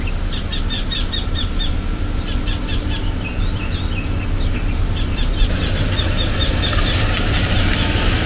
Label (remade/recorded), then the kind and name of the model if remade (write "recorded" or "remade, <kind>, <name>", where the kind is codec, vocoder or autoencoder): recorded